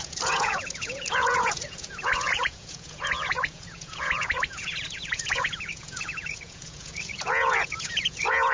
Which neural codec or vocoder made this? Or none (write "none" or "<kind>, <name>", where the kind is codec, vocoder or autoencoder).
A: vocoder, Vocos